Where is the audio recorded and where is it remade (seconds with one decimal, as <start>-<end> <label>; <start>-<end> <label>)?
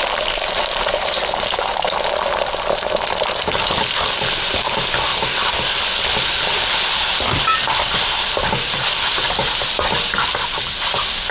0.0-5.1 remade; 5.1-6.7 recorded; 6.7-11.3 remade